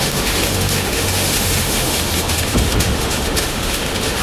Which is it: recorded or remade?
remade